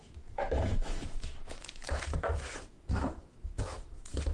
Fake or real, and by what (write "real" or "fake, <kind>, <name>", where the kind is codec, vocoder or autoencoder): fake, autoencoder, DAC-VAE